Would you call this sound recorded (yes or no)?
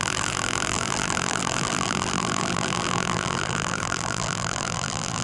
no